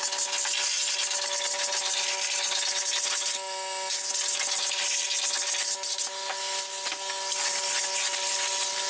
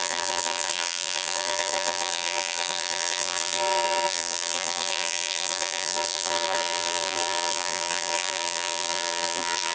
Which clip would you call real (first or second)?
first